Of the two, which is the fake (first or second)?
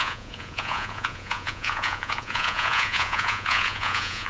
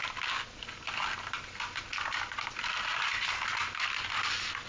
first